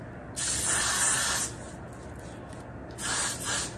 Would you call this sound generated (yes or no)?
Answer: no